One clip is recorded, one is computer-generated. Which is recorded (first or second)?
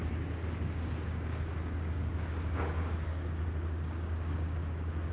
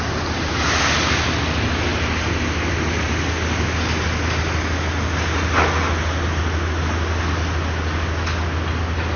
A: second